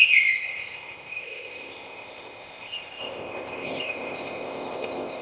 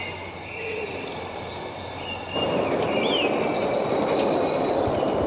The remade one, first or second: first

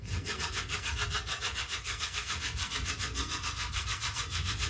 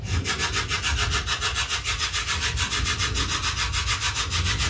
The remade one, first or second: first